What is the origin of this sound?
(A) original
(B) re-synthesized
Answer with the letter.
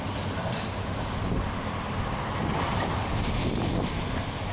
A